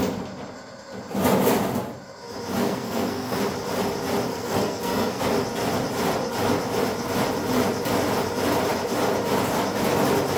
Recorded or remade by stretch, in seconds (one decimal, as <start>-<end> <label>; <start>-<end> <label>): 0.0-2.6 recorded; 2.6-3.4 remade; 3.4-4.3 recorded; 4.3-5.2 remade; 5.2-10.4 recorded